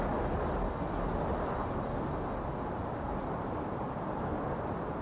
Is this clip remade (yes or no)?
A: no